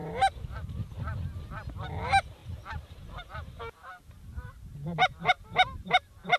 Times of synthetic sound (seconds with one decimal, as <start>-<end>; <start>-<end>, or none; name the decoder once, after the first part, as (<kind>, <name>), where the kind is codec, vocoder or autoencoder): 0.0-0.5 (vocoder, BigVGAN v2); 2.4-6.4